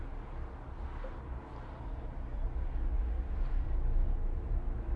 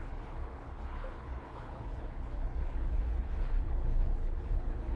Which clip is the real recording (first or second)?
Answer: first